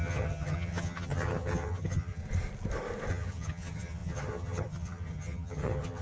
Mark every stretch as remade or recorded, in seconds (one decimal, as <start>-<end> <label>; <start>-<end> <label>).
0.0-2.2 remade; 2.2-3.1 recorded; 3.1-6.0 remade